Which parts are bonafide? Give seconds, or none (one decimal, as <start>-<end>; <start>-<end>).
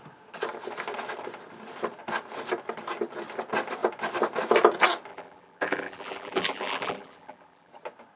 0.0-5.1; 7.7-8.2